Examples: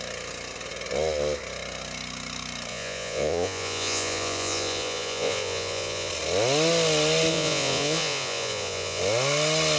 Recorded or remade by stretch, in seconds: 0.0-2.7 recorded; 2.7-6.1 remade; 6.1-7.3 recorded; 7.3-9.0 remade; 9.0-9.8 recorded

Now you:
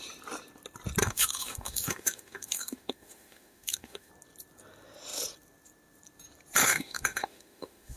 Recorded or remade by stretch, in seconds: 0.0-1.0 recorded; 1.0-4.1 remade; 4.1-6.6 recorded; 6.6-8.0 remade

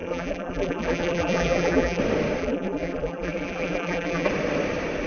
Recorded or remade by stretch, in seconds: 0.0-2.0 remade; 2.0-2.4 recorded; 2.4-4.3 remade; 4.3-5.1 recorded

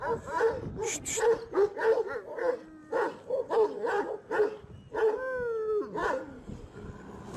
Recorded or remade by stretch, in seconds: 0.0-2.8 recorded; 2.8-4.1 remade; 4.1-6.0 recorded; 6.0-6.9 remade; 6.9-7.4 recorded

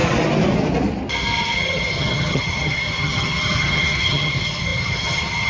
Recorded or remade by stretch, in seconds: 0.0-1.4 recorded; 1.4-5.5 remade

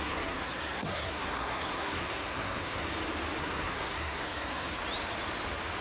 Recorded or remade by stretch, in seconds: 0.0-2.9 remade; 2.9-3.4 recorded; 3.4-4.8 remade; 4.8-5.8 recorded

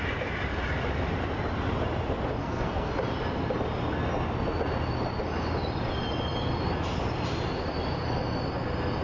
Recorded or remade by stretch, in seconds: 0.0-2.4 recorded; 2.4-2.9 remade; 2.9-9.0 recorded

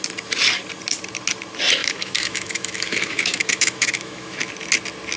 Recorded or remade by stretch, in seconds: 0.0-1.8 recorded; 1.8-4.5 remade; 4.5-5.2 recorded